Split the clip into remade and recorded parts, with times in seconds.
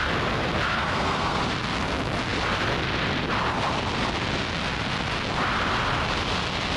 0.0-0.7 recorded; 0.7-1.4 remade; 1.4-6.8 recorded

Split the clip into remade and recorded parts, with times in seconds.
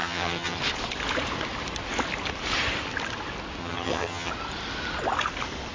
0.0-0.6 remade; 0.6-3.6 recorded; 3.6-4.3 remade; 4.3-5.7 recorded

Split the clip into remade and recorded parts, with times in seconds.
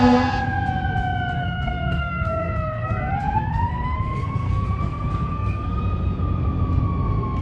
0.0-1.4 recorded; 1.4-5.8 remade; 5.8-7.4 recorded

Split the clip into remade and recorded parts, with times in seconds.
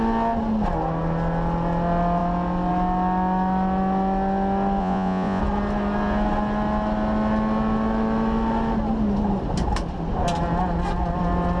0.0-4.8 recorded; 4.8-5.4 remade; 5.4-11.6 recorded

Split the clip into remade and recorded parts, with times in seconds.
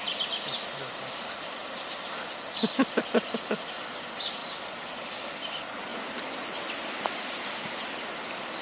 0.0-8.6 recorded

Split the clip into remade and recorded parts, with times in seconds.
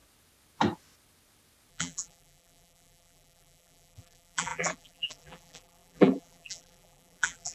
0.0-1.7 recorded; 1.7-7.5 remade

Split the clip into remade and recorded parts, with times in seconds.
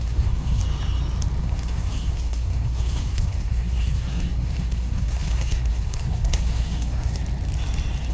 0.0-0.6 remade; 0.6-1.4 recorded; 1.4-7.2 remade; 7.2-8.1 recorded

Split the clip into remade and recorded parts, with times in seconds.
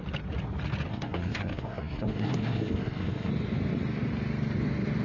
0.0-0.9 recorded; 0.9-3.3 remade; 3.3-5.0 recorded